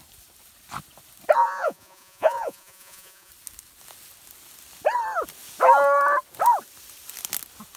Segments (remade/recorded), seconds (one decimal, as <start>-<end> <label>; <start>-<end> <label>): 0.0-1.4 recorded; 1.4-3.3 remade; 3.3-7.8 recorded